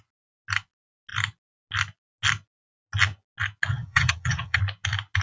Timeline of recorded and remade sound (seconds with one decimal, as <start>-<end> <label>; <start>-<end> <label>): 0.0-3.7 recorded; 3.7-4.6 remade; 4.6-5.2 recorded